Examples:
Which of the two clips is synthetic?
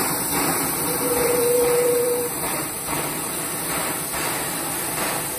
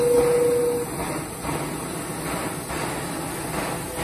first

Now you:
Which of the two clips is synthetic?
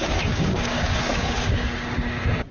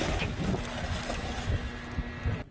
first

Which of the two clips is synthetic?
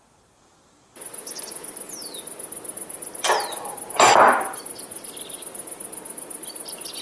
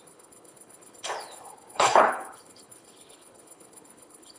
second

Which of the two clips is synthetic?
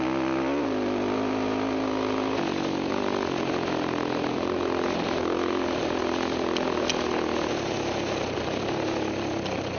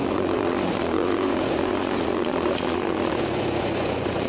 second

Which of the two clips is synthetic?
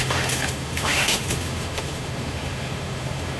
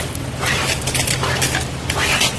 first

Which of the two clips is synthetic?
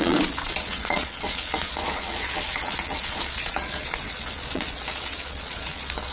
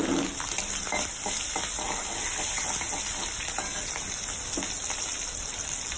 first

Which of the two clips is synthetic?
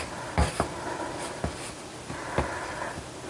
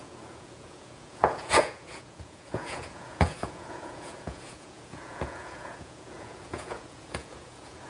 second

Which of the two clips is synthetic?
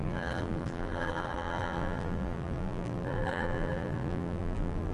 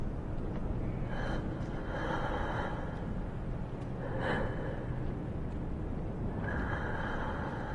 first